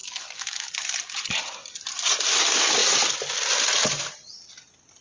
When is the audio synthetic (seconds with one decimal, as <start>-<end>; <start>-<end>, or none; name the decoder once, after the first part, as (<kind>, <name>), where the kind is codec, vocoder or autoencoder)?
0.0-0.7 (autoencoder, DAC-VAE)